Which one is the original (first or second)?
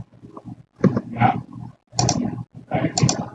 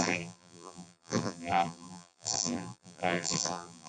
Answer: first